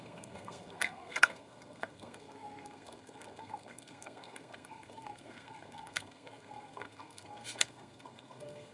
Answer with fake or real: fake